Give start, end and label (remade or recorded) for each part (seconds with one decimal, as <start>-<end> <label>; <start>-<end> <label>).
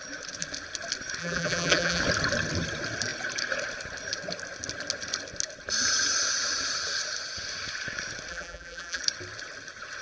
0.0-1.2 recorded; 1.2-2.0 remade; 2.0-8.3 recorded; 8.3-9.0 remade; 9.0-10.0 recorded